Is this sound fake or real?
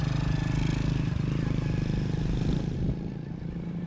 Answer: real